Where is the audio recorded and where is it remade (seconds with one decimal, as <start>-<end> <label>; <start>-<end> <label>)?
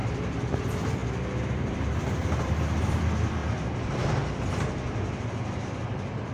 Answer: 0.0-1.0 remade; 1.0-1.5 recorded; 1.5-6.3 remade